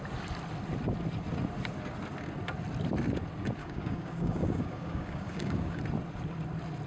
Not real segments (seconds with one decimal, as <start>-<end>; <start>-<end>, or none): 3.6-5.8